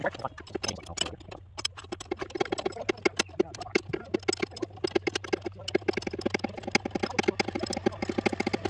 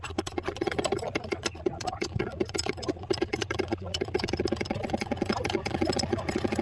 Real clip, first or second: first